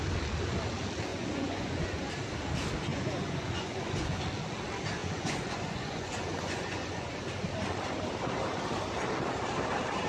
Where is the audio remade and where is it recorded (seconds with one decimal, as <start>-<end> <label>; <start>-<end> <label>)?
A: 0.0-1.1 recorded; 1.1-2.1 remade; 2.1-2.9 recorded; 2.9-4.2 remade; 4.2-5.0 recorded; 5.0-7.1 remade; 7.1-10.1 recorded